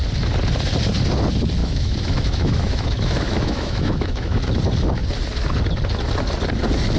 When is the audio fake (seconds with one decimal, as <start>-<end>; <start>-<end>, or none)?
1.6-4.4